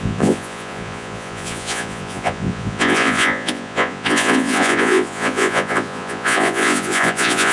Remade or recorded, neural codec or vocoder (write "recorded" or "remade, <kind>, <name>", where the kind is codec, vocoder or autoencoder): remade, vocoder, Vocos